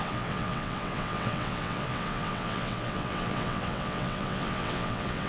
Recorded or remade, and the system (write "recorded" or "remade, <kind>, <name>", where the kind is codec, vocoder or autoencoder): remade, vocoder, WaveNeXt